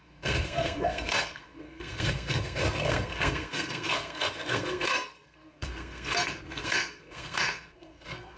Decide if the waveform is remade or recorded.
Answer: remade